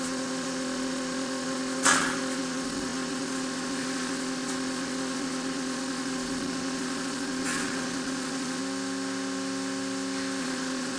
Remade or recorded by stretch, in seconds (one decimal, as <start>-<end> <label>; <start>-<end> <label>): 0.0-8.6 remade; 8.6-10.4 recorded; 10.4-11.0 remade